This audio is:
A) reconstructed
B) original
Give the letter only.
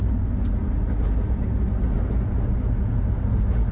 B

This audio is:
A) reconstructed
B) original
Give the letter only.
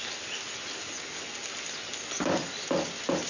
B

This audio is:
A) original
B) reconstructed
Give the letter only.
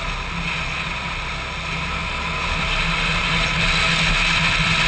A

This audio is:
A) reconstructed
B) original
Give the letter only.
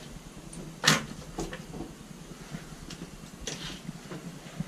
B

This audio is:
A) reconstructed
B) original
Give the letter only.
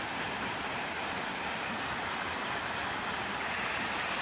B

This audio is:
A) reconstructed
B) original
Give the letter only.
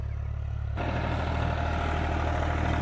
B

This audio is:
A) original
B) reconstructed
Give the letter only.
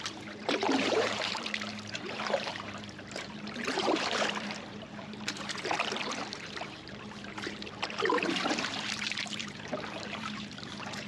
B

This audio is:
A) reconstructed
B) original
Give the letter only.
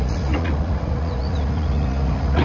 A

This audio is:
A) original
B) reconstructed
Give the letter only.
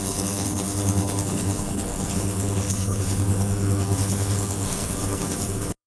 B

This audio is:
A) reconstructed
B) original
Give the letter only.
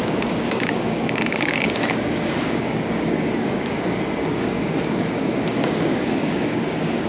A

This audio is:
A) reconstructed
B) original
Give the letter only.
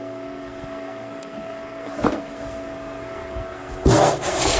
A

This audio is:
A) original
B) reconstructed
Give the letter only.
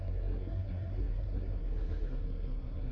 B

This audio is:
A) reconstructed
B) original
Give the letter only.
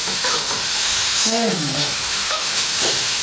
A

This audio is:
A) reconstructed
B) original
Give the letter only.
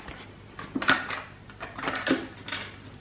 B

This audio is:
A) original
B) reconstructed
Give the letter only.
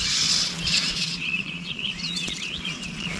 B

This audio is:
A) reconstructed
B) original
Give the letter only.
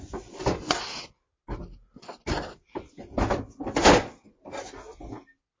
B